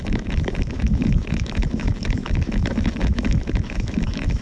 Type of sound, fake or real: fake